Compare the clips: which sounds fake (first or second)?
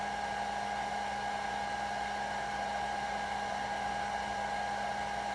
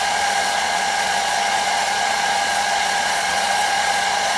second